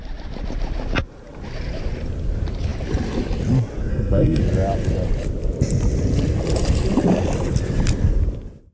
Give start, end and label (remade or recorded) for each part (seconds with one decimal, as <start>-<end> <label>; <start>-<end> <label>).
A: 0.0-3.9 recorded; 3.9-4.4 remade; 4.4-8.7 recorded